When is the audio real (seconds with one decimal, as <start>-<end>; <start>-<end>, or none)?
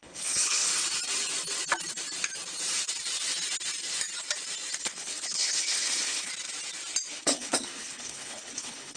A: 0.7-4.8; 6.3-7.1